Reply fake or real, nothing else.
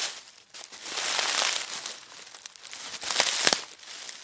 real